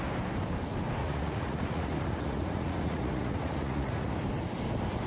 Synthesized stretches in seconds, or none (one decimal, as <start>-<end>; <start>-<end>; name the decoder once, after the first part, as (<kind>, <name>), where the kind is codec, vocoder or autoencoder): 1.0-4.1 (vocoder, Vocos)